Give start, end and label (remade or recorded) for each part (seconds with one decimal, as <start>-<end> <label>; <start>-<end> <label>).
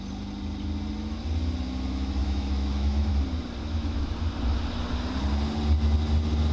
0.0-2.2 recorded; 2.2-3.1 remade; 3.1-3.6 recorded; 3.6-4.1 remade; 4.1-6.5 recorded